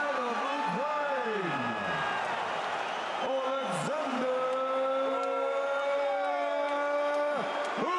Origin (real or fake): real